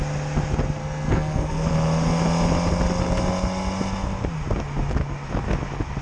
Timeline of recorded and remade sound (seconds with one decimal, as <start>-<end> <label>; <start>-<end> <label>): 0.0-0.8 recorded; 0.8-1.7 remade; 1.7-6.0 recorded